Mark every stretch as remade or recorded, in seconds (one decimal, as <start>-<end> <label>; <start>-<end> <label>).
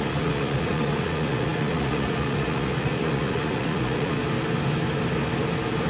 0.0-4.2 remade; 4.2-5.9 recorded